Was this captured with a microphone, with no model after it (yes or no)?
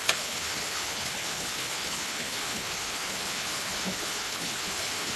no